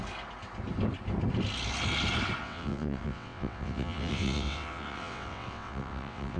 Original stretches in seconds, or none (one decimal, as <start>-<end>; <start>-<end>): 0.0-2.4